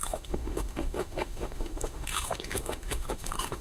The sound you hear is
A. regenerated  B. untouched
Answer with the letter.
A